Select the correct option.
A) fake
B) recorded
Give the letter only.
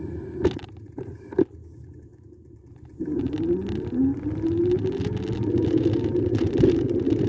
B